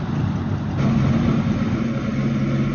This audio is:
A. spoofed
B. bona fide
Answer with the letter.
B